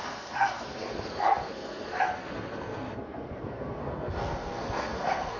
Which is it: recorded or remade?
remade